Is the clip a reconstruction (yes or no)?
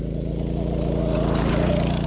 no